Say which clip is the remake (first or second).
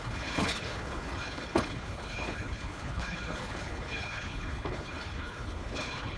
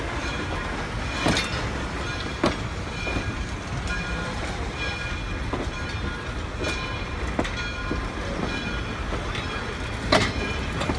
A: first